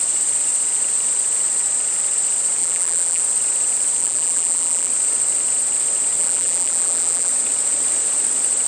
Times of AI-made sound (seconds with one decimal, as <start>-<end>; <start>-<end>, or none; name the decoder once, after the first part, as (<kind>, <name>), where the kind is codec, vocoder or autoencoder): 2.6-3.2 (vocoder, BigVGAN v2); 4.0-4.9; 6.2-7.3